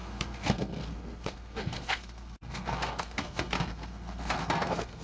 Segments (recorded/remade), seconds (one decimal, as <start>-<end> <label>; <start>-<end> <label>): 0.0-5.0 remade